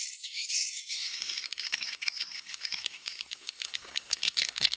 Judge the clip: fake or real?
fake